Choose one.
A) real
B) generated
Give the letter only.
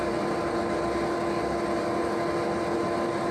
A